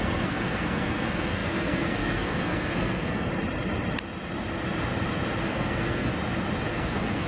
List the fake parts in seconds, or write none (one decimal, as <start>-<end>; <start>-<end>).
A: 0.0-3.3; 5.4-6.1; 6.7-7.3